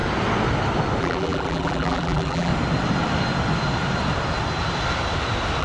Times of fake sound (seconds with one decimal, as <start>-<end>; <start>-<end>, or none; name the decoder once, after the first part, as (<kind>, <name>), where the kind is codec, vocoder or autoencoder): 1.0-2.5 (vocoder, BigVGAN v2)